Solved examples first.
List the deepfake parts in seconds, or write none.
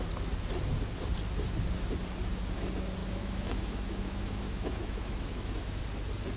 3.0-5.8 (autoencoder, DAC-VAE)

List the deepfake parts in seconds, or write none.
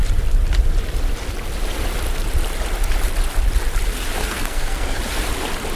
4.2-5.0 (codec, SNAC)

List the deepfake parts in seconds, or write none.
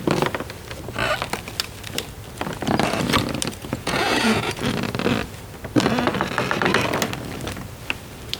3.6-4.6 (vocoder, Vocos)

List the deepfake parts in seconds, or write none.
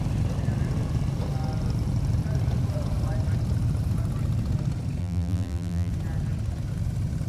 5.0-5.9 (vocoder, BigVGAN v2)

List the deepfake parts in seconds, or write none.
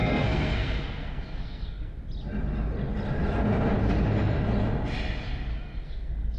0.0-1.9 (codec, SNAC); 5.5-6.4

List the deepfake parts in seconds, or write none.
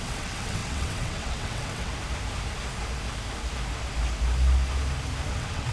0.0-1.9 (vocoder, WaveNeXt); 5.3-5.7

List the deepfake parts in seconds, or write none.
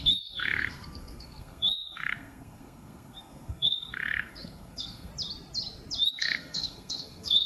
0.0-5.1 (codec, SNAC); 6.1-7.5